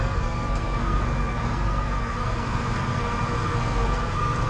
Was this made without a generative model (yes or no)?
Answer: no